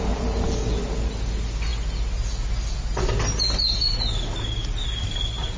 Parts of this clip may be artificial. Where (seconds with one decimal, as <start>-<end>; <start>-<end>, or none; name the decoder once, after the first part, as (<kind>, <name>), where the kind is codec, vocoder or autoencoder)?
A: none